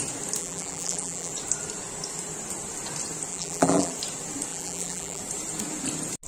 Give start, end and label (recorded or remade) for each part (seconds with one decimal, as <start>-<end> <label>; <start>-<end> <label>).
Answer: 0.0-0.4 recorded; 0.4-1.3 remade; 1.3-3.3 recorded; 3.3-3.9 remade; 3.9-4.5 recorded; 4.5-5.2 remade; 5.2-6.3 recorded